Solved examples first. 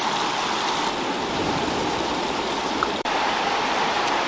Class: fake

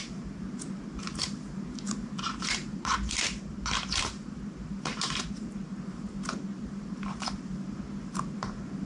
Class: fake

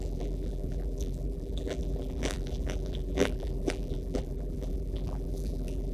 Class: fake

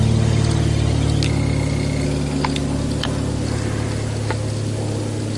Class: real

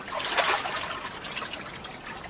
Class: fake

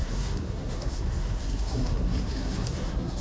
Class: fake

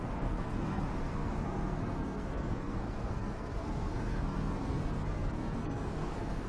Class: fake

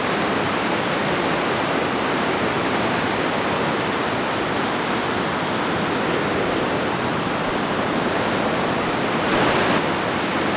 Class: real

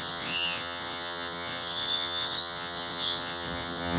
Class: fake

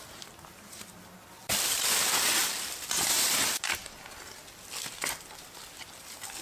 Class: real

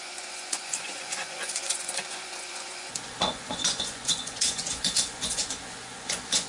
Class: fake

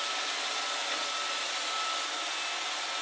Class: real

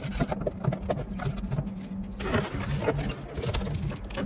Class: real